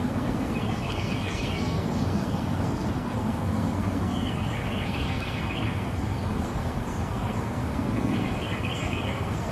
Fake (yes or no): yes